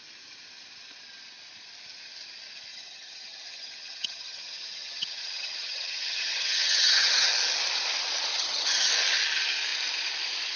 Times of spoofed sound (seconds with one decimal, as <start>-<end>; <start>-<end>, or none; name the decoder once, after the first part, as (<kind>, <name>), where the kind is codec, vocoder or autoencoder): 2.7-7.3 (vocoder, HiFi-GAN); 8.3-8.9